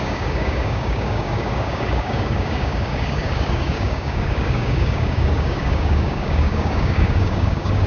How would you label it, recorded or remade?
remade